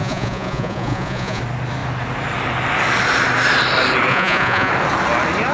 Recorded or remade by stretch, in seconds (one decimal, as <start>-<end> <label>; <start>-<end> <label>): 0.0-1.4 remade; 1.4-4.1 recorded; 4.1-4.7 remade; 4.7-5.5 recorded